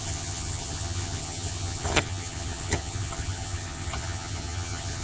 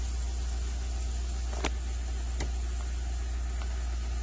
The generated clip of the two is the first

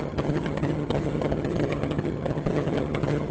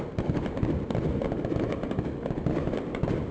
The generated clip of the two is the first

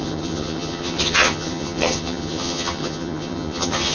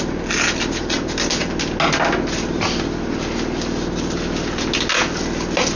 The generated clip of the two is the first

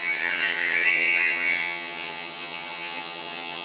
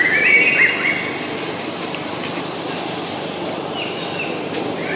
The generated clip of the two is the first